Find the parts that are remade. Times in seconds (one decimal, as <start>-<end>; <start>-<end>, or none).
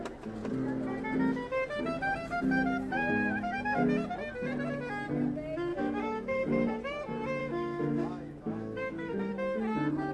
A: 5.7-6.7; 7.4-9.3